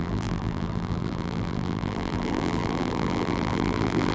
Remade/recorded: remade